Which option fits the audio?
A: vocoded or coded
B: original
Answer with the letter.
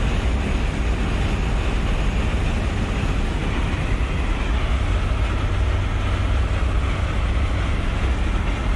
B